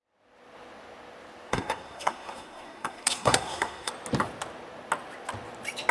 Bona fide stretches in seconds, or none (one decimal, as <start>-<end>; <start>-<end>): 0.0-1.5; 3.9-5.9